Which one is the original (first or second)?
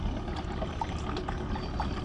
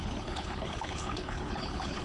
first